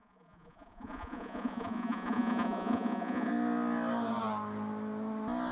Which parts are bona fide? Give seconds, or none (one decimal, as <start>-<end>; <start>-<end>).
3.3-5.5